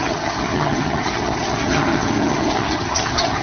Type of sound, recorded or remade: remade